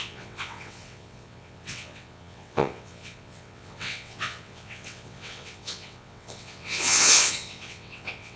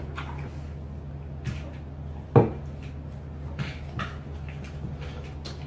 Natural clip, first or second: second